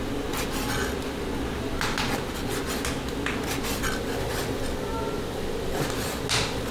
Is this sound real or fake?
real